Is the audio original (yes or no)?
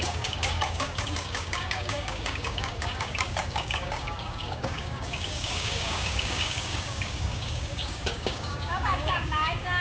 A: no